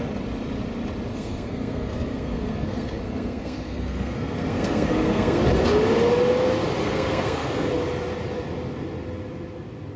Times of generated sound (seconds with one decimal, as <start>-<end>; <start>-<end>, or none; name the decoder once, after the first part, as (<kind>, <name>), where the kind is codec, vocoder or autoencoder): 1.1-5.4 (codec, SNAC); 6.8-7.7